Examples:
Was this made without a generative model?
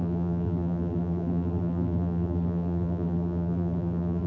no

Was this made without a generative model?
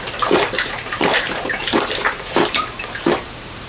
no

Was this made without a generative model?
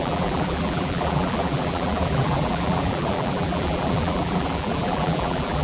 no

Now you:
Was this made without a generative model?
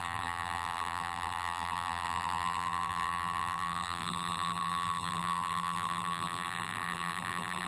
no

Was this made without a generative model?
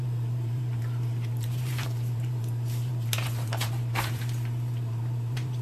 no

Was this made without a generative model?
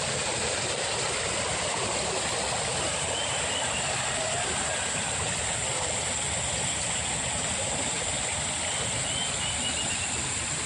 no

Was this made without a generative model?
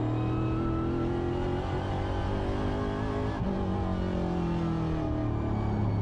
yes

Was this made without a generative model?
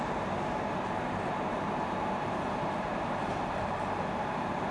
no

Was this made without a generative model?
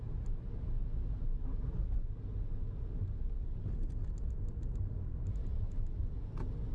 yes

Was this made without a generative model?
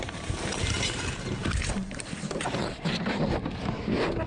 no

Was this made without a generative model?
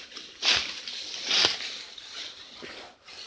no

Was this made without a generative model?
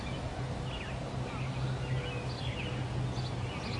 yes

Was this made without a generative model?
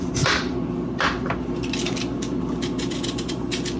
no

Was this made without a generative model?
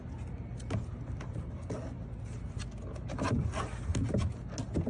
yes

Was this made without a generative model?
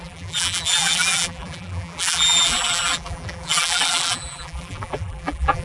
no